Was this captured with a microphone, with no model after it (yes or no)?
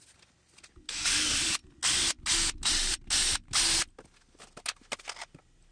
yes